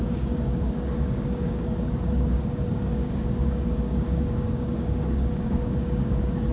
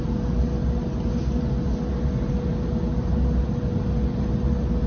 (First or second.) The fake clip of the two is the first